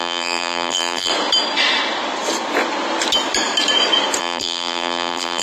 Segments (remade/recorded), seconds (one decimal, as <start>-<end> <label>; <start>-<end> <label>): 0.0-1.1 remade; 1.1-4.2 recorded; 4.2-5.4 remade